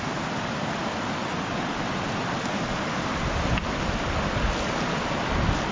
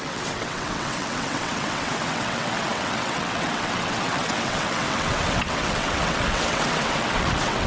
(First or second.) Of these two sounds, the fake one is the second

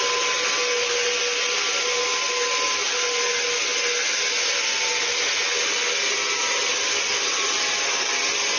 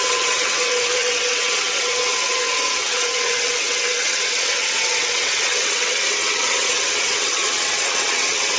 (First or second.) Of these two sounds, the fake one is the second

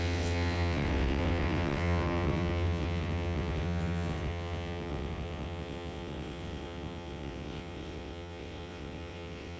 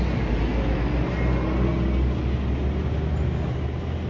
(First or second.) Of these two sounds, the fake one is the first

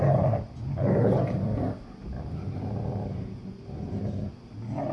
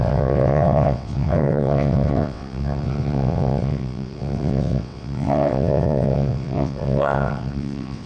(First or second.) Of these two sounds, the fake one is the second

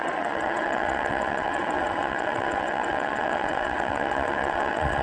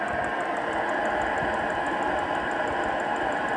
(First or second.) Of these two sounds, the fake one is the first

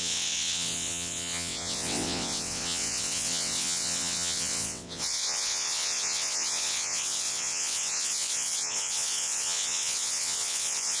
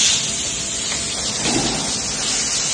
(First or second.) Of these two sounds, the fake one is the first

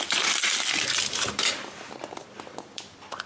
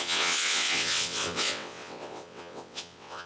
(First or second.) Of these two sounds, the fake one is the second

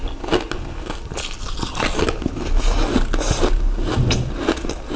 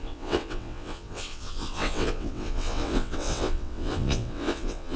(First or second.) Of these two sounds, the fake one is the second